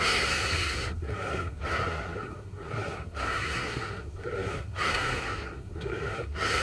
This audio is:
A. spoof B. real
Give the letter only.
A